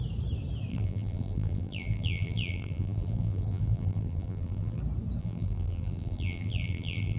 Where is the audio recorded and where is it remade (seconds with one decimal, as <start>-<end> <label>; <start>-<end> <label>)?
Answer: 0.0-0.7 recorded; 0.7-4.8 remade; 4.8-5.2 recorded; 5.2-7.2 remade